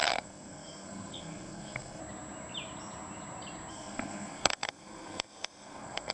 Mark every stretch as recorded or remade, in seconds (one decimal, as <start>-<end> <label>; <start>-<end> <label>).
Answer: 0.0-2.0 remade; 2.0-3.7 recorded; 3.7-6.1 remade